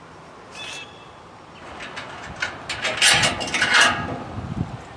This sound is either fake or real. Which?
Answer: real